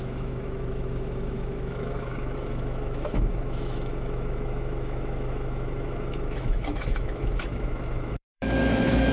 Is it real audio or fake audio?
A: fake